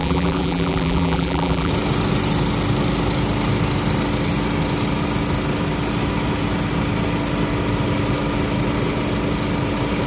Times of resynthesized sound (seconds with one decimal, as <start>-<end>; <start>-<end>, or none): 0.0-1.7